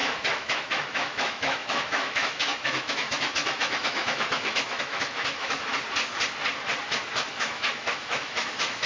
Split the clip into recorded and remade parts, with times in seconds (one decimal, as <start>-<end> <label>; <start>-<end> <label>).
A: 0.0-5.7 remade; 5.7-7.4 recorded; 7.4-8.9 remade